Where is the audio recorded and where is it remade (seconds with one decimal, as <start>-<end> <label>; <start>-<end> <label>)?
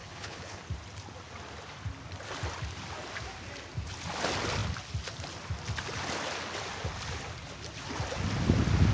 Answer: 0.0-0.6 remade; 0.6-8.9 recorded